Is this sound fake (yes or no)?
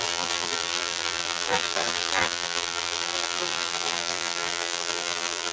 yes